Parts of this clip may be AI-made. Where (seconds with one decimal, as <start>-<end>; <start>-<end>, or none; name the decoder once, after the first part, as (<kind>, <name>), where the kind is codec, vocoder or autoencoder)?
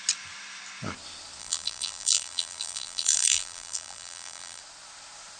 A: 1.4-4.6 (vocoder, BigVGAN v2)